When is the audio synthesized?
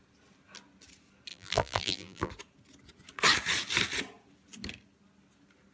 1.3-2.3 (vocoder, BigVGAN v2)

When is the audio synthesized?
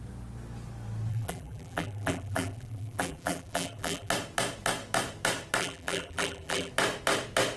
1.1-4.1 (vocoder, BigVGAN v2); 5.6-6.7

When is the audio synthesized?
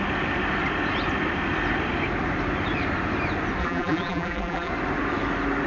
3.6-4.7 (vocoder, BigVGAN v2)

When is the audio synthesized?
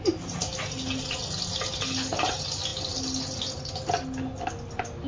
none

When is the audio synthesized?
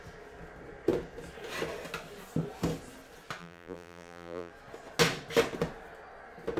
3.4-4.5 (vocoder, BigVGAN v2)